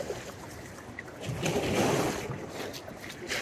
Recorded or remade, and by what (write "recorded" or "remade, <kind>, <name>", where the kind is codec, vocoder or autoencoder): recorded